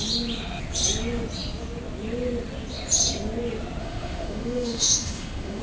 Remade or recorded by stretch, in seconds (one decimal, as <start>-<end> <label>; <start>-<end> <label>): 0.0-3.8 recorded; 3.8-5.6 remade